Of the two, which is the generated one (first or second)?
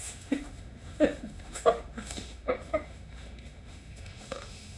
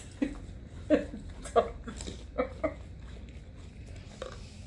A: first